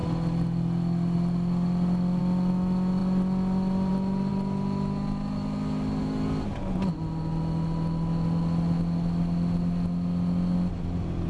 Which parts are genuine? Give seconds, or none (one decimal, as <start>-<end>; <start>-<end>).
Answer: 0.0-11.3